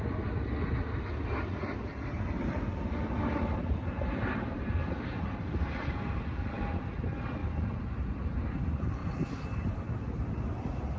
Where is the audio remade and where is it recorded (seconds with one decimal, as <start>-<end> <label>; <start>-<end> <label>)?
0.0-11.0 recorded